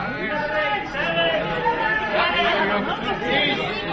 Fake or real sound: real